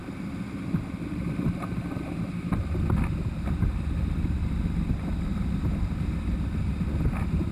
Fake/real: real